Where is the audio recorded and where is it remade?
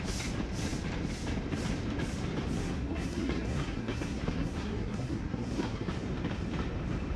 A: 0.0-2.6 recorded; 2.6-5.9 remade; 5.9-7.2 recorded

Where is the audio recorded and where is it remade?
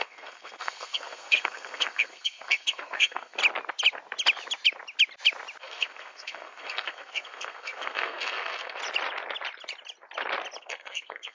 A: 0.0-3.4 remade; 3.4-5.6 recorded; 5.6-8.8 remade; 8.8-10.6 recorded; 10.6-11.3 remade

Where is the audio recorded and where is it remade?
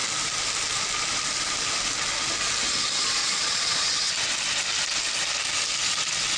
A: 0.0-3.2 recorded; 3.2-4.0 remade; 4.0-6.4 recorded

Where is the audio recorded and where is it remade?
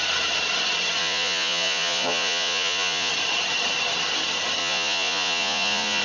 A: 0.0-1.0 recorded; 1.0-3.1 remade; 3.1-4.6 recorded; 4.6-6.0 remade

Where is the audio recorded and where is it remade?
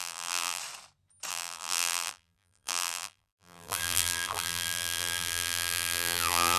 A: 0.0-0.6 remade; 0.6-1.3 recorded; 1.3-6.6 remade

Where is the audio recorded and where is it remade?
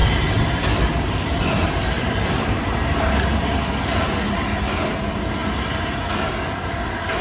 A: 0.0-7.2 recorded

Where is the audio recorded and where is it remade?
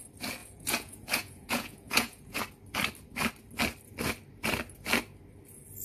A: 0.0-0.4 recorded; 0.4-2.4 remade; 2.4-5.8 recorded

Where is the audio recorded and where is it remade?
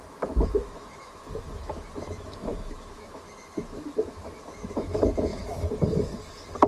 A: 0.0-6.7 remade